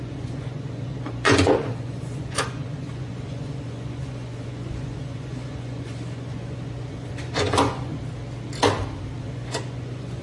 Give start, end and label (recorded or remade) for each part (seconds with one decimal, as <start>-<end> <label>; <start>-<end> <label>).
0.0-7.9 remade; 7.9-9.2 recorded; 9.2-10.2 remade